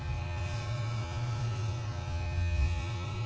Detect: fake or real fake